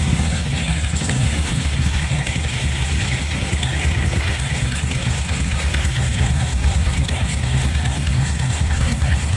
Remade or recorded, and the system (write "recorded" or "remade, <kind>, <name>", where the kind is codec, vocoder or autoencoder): remade, codec, SNAC